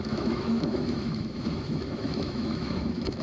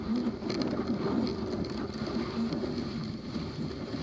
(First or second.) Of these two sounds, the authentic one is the second